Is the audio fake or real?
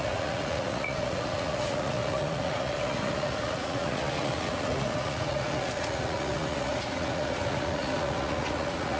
fake